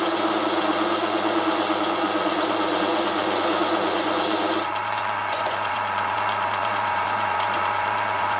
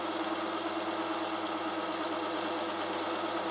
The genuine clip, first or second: second